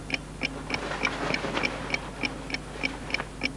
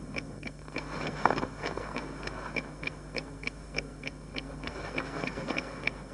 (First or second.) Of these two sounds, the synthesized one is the second